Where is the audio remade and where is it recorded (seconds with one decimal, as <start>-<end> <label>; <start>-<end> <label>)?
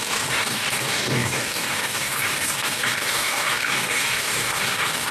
0.0-5.1 remade